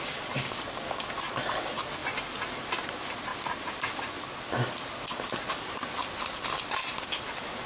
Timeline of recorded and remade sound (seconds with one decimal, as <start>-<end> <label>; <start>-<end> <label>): 0.0-7.7 recorded

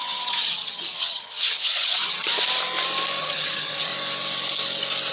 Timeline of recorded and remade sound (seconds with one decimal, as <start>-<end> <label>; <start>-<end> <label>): 0.0-2.3 remade; 2.3-3.2 recorded; 3.2-3.9 remade; 3.9-5.1 recorded

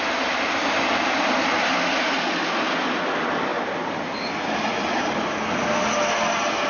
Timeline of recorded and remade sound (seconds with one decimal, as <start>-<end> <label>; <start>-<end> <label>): 0.0-6.7 recorded

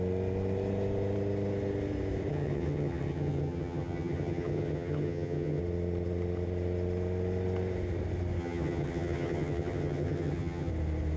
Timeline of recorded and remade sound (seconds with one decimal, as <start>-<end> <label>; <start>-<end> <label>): 0.0-2.3 recorded; 2.3-5.6 remade; 5.6-8.4 recorded; 8.4-10.7 remade; 10.7-11.2 recorded